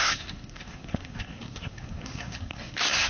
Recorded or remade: remade